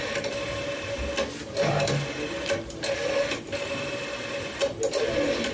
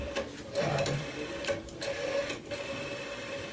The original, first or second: first